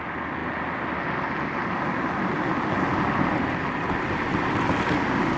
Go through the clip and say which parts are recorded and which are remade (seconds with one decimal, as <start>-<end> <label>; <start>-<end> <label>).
0.0-5.4 recorded